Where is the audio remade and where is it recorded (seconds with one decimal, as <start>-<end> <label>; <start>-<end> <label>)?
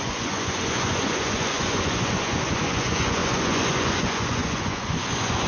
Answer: 0.0-5.5 remade